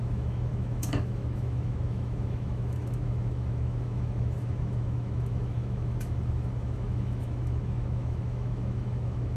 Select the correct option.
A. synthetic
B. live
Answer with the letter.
A